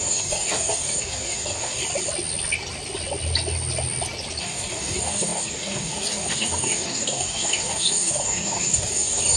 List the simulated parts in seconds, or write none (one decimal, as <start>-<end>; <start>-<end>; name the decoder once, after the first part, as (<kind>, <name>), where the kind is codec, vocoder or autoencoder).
0.0-1.8 (codec, DAC); 4.4-9.4